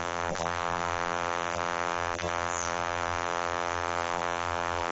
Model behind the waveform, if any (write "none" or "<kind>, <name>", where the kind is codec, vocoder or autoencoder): vocoder, BigVGAN v2